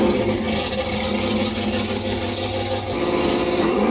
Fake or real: real